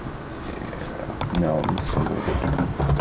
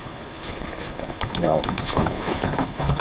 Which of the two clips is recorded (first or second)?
first